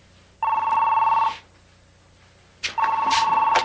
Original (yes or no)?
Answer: yes